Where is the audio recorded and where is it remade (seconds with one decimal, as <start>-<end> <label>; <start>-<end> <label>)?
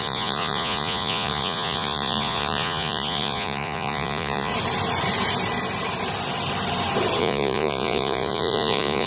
0.0-4.5 remade; 4.5-7.2 recorded; 7.2-9.1 remade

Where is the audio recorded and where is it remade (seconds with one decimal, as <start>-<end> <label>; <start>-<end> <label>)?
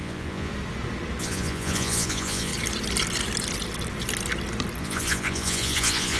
0.0-0.5 remade; 0.5-1.2 recorded; 1.2-2.5 remade; 2.5-4.8 recorded; 4.8-6.2 remade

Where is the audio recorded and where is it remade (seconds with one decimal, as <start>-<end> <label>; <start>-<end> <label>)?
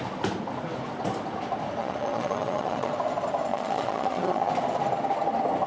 0.0-1.8 recorded; 1.8-2.9 remade; 2.9-3.5 recorded; 3.5-4.5 remade; 4.5-5.7 recorded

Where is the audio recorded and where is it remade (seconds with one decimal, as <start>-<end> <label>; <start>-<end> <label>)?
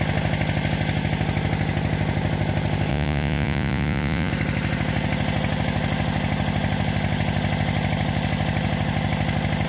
0.0-2.9 recorded; 2.9-4.3 remade; 4.3-9.7 recorded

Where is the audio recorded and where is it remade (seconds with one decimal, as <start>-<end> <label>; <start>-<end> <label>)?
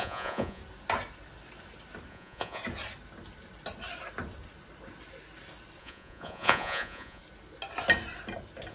0.0-0.6 remade; 0.6-2.1 recorded; 2.1-2.6 remade; 2.6-5.8 recorded; 5.8-7.2 remade; 7.2-8.7 recorded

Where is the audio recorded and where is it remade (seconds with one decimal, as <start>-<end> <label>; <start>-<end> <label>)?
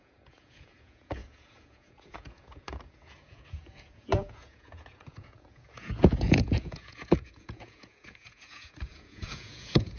0.0-10.0 remade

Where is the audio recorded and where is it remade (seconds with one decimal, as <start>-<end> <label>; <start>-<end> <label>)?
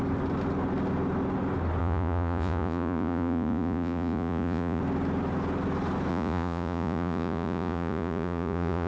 0.0-1.8 recorded; 1.8-4.8 remade; 4.8-6.1 recorded; 6.1-8.9 remade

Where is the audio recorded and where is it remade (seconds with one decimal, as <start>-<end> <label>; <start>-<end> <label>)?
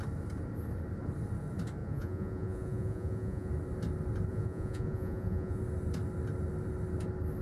0.0-1.8 recorded; 1.8-3.5 remade; 3.5-4.3 recorded; 4.3-5.6 remade; 5.6-7.4 recorded